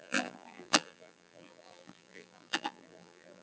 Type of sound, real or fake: fake